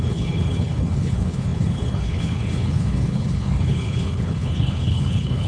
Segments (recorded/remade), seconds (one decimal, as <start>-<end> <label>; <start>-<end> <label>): 0.0-5.5 remade